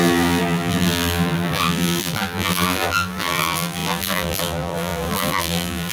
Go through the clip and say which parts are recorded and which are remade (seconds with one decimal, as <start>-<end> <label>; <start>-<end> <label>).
0.0-5.9 remade